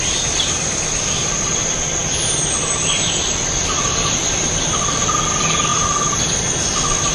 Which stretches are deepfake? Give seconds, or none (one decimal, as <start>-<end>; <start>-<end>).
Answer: none